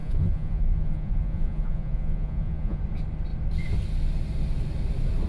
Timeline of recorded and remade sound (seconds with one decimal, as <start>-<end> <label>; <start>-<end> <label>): 0.0-2.8 remade; 2.8-5.3 recorded